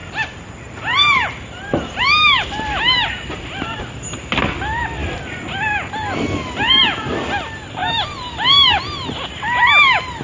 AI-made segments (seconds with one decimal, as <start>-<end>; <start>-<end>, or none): 0.0-3.8; 7.8-9.7